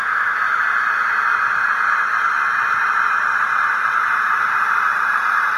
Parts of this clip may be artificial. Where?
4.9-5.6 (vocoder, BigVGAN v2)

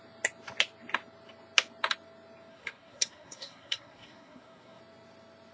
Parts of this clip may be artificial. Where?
2.5-4.8 (codec, SNAC)

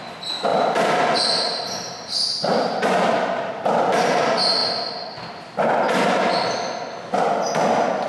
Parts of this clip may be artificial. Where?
none

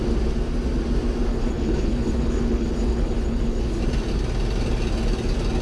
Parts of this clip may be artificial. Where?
1.3-3.8 (codec, HILCodec)

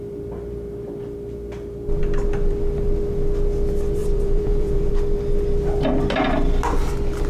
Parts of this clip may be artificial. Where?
4.0-4.9 (vocoder, Vocos)

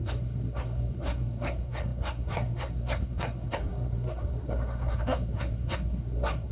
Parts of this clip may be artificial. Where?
0.0-6.5 (codec, SNAC)

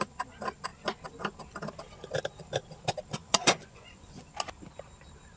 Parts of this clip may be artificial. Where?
3.2-4.3 (vocoder, Vocos)

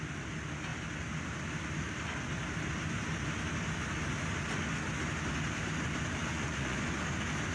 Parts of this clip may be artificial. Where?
6.2-7.0 (vocoder, Vocos)